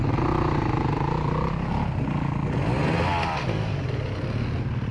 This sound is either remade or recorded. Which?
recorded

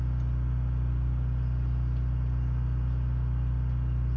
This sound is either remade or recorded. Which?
recorded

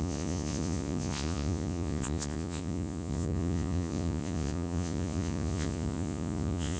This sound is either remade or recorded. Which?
remade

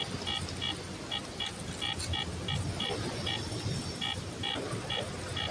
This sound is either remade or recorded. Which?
recorded